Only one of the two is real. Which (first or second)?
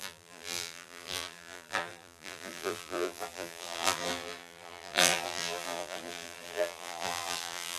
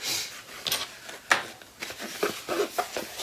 second